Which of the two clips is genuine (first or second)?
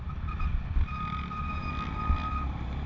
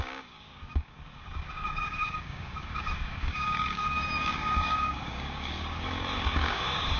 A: first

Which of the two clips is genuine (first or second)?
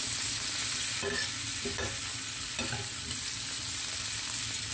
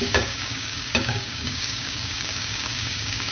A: first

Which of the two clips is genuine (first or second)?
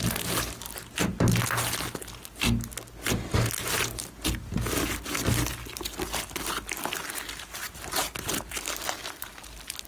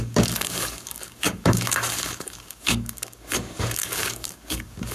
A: first